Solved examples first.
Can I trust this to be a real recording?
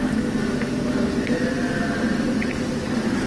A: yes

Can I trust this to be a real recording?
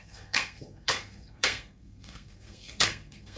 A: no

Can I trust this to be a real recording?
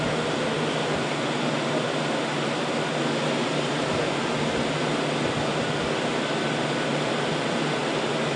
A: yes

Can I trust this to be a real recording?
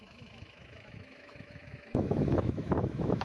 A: no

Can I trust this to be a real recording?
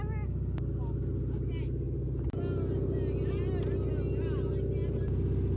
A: yes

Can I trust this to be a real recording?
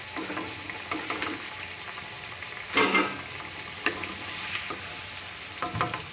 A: yes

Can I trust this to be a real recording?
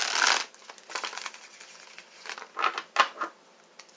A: yes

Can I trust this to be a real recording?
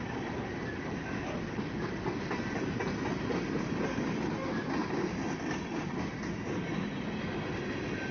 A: yes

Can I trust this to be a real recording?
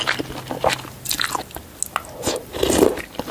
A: yes